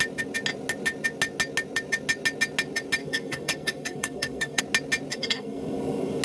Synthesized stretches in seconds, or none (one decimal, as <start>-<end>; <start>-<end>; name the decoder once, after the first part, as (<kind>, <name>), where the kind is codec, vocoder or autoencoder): 3.0-4.6 (codec, SNAC); 5.1-6.2